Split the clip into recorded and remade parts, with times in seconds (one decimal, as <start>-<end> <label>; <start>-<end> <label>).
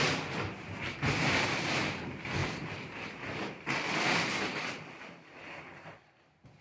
0.0-2.4 recorded; 2.4-5.6 remade; 5.6-6.6 recorded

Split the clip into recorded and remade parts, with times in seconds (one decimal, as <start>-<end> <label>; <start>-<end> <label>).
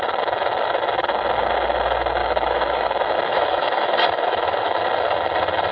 0.0-2.2 recorded; 2.2-4.8 remade; 4.8-5.7 recorded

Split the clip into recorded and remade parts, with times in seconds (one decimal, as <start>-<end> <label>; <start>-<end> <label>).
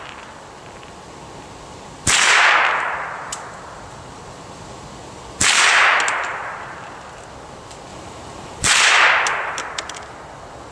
0.0-5.9 recorded; 5.9-6.4 remade; 6.4-7.9 recorded; 7.9-8.7 remade; 8.7-10.7 recorded